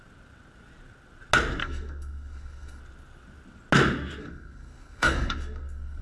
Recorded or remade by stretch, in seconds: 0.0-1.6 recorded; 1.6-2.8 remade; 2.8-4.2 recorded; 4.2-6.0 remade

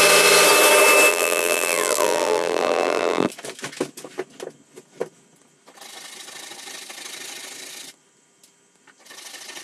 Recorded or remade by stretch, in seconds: 0.0-1.1 recorded; 1.1-3.3 remade; 3.3-9.6 recorded

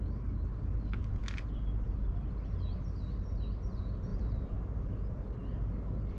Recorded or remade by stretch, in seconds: 0.0-4.1 recorded; 4.1-4.8 remade; 4.8-6.2 recorded

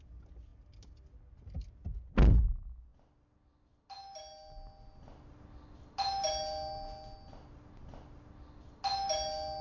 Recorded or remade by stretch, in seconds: 0.0-9.6 recorded

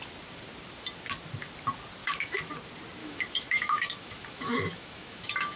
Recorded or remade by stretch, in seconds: 0.0-2.0 recorded; 2.0-2.5 remade; 2.5-3.0 recorded; 3.0-5.6 remade

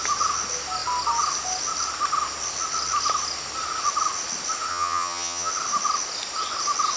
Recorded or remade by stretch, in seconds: 0.0-4.7 recorded; 4.7-5.5 remade; 5.5-7.0 recorded

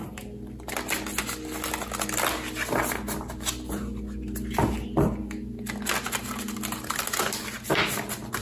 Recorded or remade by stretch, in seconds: 0.0-8.4 recorded

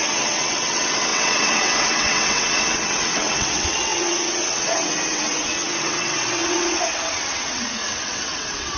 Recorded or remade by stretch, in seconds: 0.0-8.8 remade